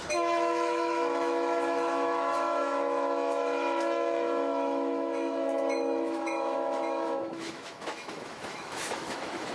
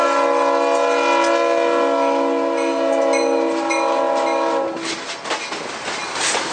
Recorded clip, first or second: second